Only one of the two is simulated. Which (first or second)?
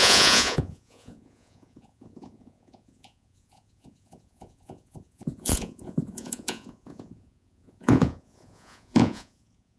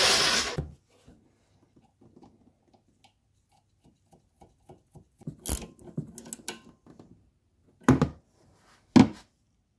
first